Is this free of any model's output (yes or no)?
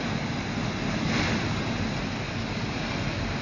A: yes